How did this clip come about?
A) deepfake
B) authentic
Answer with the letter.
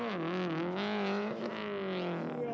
B